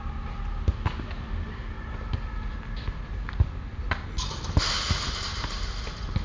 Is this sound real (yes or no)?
yes